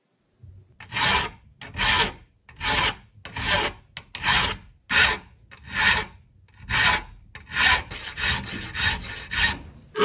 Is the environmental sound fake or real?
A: real